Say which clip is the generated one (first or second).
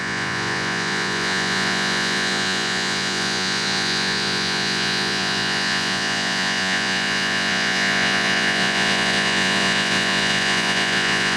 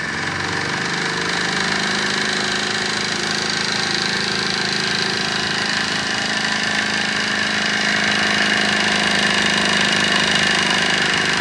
first